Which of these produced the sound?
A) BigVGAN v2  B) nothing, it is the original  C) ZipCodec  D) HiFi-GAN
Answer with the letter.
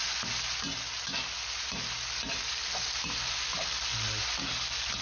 B